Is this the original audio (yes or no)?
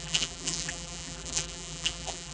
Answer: no